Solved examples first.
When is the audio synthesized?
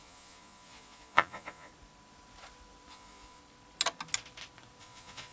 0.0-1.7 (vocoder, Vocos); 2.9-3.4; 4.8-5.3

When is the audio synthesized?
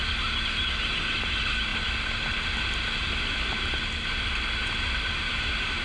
none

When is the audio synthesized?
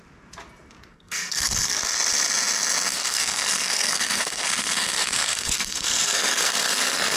0.9-1.8 (codec, SNAC); 3.0-7.2